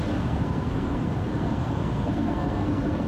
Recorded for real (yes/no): no